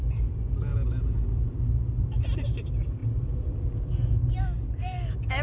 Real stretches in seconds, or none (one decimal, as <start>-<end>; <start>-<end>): 0.0-5.4